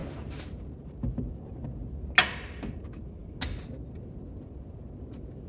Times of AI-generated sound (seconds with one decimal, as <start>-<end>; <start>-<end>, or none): none